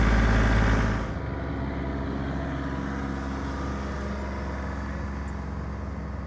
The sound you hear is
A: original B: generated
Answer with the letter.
A